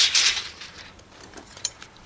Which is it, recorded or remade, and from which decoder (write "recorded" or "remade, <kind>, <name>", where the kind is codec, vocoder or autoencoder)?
remade, vocoder, BigVGAN v2